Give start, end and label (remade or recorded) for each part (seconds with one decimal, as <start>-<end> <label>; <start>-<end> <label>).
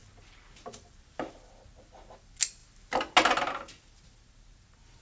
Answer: 0.0-5.0 recorded